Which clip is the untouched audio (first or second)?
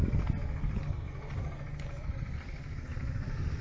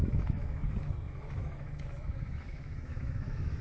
first